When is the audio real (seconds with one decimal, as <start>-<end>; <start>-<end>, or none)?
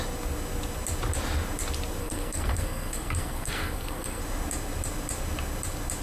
0.0-2.0; 4.2-6.0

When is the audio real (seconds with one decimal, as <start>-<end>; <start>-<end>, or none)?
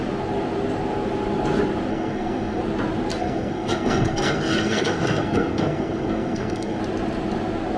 0.0-1.9; 2.6-3.2; 6.8-7.8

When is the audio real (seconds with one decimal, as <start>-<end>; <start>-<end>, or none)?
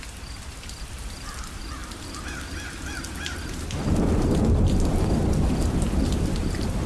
0.0-6.9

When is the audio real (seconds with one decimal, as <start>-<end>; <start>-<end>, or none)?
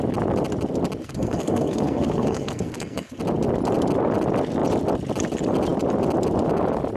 0.0-1.0; 3.2-7.0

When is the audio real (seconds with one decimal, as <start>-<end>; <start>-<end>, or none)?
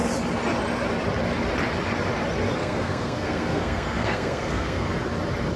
0.0-2.6; 4.9-5.6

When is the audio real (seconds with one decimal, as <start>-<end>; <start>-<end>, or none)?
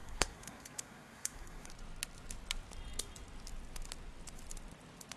1.7-5.2